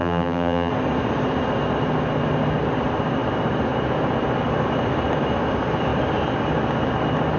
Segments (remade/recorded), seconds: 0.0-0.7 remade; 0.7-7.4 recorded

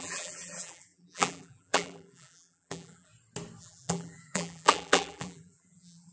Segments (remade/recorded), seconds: 0.0-3.1 remade; 3.1-3.6 recorded; 3.6-6.1 remade